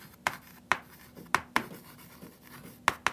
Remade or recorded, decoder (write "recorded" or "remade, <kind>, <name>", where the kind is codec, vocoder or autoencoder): recorded